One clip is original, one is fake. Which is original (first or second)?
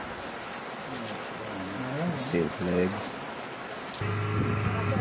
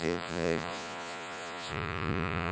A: first